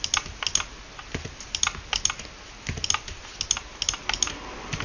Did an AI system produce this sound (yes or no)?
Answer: no